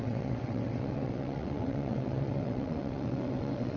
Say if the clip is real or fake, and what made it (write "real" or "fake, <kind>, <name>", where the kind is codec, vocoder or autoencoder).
fake, vocoder, WaveNeXt